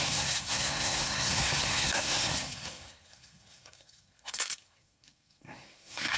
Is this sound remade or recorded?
remade